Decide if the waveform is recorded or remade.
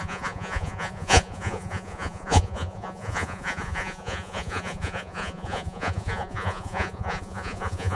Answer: remade